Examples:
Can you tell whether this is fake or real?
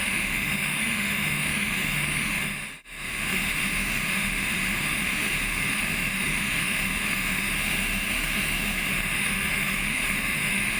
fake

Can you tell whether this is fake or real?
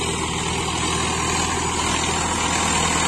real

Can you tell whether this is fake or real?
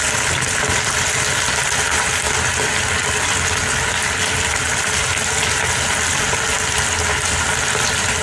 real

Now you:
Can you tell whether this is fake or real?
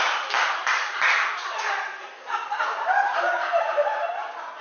real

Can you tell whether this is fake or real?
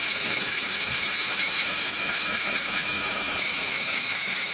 fake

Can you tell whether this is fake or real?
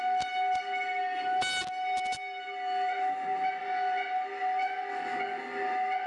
real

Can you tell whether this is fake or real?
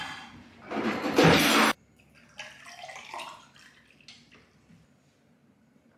real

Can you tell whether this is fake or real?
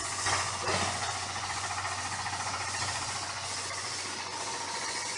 fake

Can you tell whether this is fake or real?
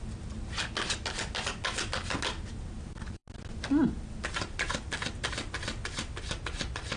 real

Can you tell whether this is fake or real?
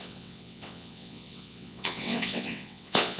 fake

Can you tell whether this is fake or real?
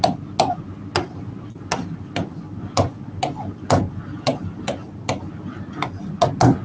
real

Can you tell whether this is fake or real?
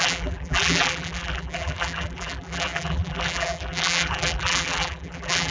fake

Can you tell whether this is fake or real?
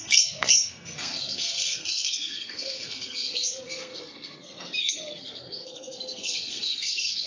fake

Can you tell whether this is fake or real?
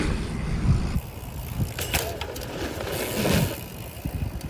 real